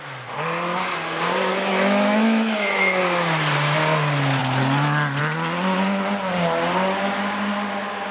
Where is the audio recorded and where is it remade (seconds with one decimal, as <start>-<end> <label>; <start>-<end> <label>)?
0.0-1.5 recorded; 1.5-3.0 remade; 3.0-8.1 recorded

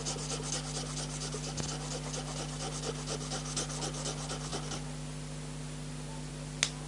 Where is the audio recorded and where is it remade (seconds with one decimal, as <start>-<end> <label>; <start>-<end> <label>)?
0.0-6.9 recorded

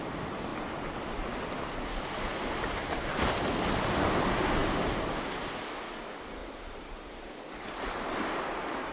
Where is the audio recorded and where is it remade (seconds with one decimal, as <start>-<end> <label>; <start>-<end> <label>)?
0.0-2.3 recorded; 2.3-3.1 remade; 3.1-6.4 recorded; 6.4-7.3 remade; 7.3-8.9 recorded